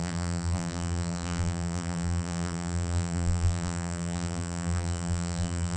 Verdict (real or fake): fake